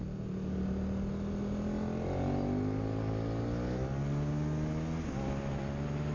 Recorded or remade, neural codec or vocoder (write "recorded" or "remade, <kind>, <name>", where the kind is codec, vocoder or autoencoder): recorded